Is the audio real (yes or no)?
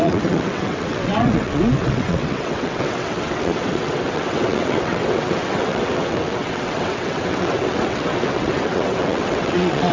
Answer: no